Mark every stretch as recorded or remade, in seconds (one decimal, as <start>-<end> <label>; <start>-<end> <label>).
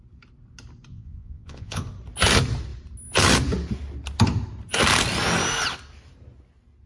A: 0.0-0.9 recorded; 0.9-1.8 remade; 1.8-6.9 recorded